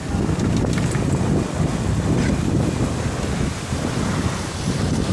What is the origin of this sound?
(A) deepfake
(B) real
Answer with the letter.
B